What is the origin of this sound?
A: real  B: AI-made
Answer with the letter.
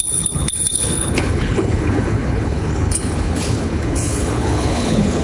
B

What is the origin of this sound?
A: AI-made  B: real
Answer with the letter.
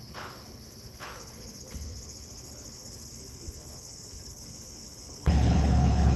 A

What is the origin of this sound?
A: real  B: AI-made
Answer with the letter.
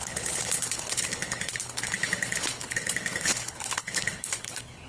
B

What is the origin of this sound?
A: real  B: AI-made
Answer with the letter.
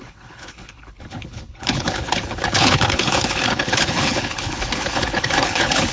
B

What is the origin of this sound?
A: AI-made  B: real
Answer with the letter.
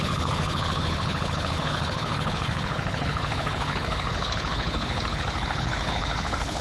A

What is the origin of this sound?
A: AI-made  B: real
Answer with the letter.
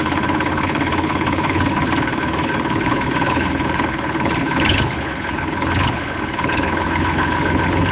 A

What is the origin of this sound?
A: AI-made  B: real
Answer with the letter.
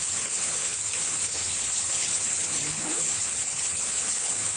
A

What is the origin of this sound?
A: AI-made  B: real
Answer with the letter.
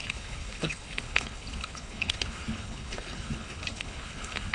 A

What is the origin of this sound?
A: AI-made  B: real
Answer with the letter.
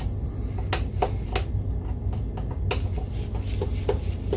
B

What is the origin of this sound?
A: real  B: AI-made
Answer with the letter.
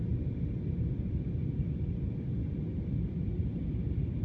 A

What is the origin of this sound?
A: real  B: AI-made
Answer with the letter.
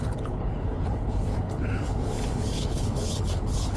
B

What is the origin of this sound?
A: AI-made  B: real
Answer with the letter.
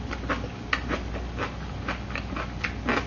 B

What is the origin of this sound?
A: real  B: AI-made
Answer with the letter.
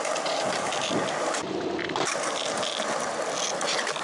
A